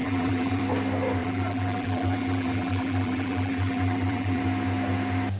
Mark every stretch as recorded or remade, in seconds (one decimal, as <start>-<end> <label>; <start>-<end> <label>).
0.0-0.6 remade; 0.6-1.2 recorded; 1.2-4.4 remade; 4.4-5.4 recorded